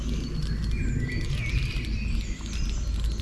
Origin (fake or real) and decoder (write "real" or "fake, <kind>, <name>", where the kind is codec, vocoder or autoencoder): real